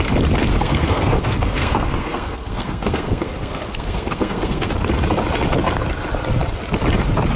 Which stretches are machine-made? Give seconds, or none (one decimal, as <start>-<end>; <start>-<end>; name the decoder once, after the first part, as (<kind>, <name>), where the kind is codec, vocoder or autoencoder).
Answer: 0.5-4.7 (codec, SNAC)